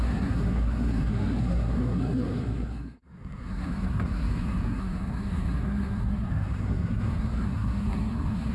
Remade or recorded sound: remade